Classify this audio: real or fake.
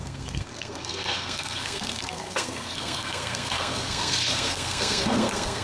fake